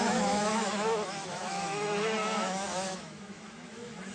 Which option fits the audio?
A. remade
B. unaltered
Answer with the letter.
A